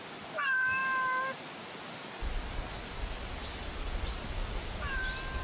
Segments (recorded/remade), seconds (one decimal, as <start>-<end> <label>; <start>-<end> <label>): 0.0-5.4 recorded